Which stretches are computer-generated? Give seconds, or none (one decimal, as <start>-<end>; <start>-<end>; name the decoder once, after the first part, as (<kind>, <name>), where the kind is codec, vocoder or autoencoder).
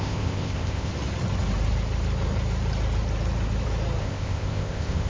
0.0-0.9 (codec, ZipCodec); 4.0-5.1